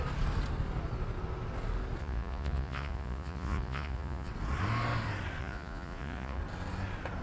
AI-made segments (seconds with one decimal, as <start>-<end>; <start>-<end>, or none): 2.0-4.3; 5.4-6.4

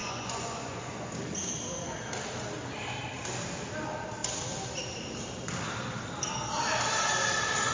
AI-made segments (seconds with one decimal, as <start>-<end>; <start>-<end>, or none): 0.0-1.1

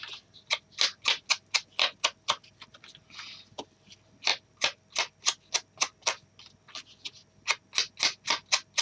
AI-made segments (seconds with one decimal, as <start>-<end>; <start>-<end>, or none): none

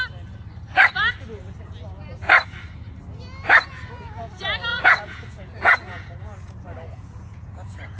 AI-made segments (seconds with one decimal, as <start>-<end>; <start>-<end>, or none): 4.7-8.0

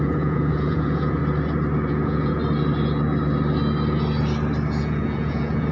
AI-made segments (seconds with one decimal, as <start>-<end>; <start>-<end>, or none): 0.0-1.2; 1.9-2.4; 4.8-5.7